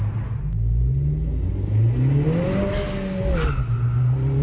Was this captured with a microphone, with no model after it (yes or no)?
yes